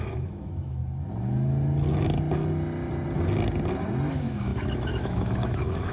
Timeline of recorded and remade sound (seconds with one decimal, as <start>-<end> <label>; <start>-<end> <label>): 0.0-0.8 remade; 0.8-4.1 recorded; 4.1-5.9 remade